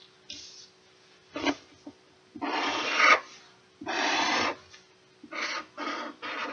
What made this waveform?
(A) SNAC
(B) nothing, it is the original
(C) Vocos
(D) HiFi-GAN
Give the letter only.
B